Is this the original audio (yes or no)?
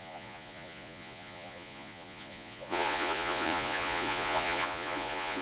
no